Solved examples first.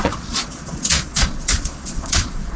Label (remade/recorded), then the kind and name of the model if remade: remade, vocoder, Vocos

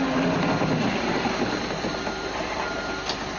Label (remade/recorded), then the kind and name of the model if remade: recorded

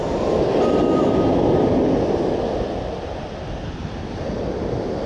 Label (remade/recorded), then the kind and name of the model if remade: recorded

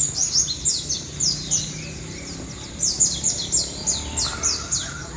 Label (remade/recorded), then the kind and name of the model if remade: recorded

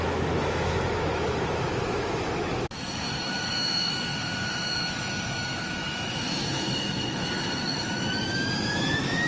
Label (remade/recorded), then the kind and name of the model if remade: remade, autoencoder, DAC-VAE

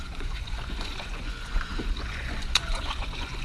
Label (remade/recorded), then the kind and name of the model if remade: remade, vocoder, Vocos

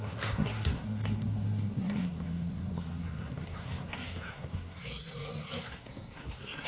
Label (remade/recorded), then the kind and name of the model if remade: remade, codec, SNAC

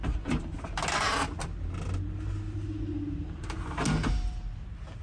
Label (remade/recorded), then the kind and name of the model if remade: recorded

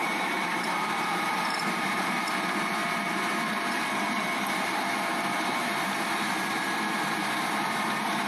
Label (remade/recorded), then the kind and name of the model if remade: remade, vocoder, BigVGAN v2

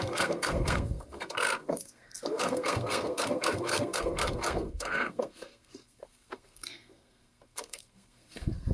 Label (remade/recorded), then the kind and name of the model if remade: remade, codec, SNAC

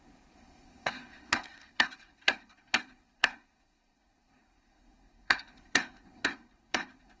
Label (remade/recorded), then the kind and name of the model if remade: remade, codec, SNAC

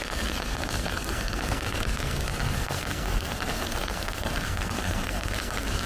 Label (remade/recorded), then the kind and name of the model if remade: remade, codec, SNAC